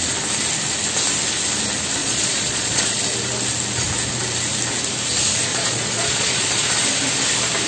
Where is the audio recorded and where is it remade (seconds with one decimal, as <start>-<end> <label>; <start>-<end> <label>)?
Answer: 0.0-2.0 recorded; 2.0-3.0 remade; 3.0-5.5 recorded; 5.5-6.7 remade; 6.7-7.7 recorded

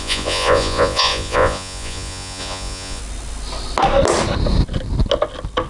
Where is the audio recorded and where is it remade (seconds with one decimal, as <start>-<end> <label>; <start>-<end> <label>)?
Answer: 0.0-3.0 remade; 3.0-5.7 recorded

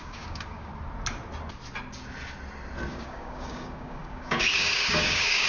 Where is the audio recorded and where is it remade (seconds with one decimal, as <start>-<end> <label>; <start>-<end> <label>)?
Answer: 0.0-0.7 remade; 0.7-2.9 recorded; 2.9-5.5 remade

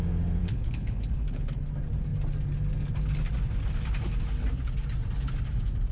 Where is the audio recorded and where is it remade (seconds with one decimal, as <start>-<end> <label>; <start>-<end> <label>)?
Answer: 0.0-0.4 recorded; 0.4-1.7 remade; 1.7-5.9 recorded